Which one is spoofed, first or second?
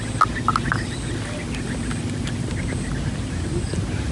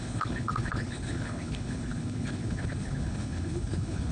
second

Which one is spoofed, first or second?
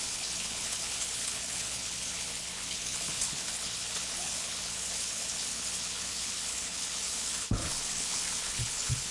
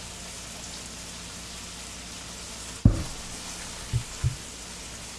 first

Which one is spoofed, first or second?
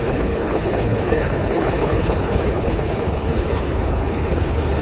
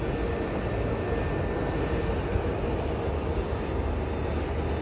first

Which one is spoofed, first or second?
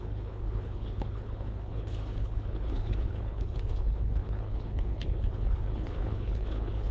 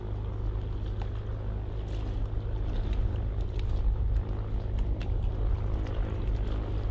first